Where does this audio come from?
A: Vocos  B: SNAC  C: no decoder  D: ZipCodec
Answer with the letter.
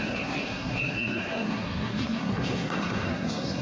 B